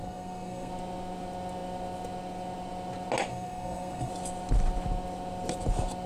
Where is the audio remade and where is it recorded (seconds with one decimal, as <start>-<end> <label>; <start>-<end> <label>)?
0.0-0.7 remade; 0.7-3.3 recorded; 3.3-4.1 remade; 4.1-6.1 recorded